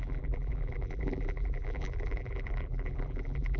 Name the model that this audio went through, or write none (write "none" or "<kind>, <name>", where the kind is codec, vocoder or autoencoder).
vocoder, BigVGAN v2